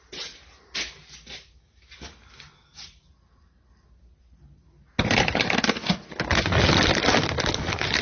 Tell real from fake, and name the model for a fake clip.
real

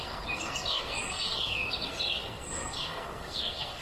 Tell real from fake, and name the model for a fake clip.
fake, codec, SNAC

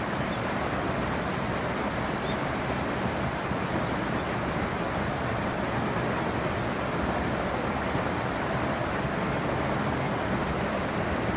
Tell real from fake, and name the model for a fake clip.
real